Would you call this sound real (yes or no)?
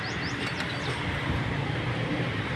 yes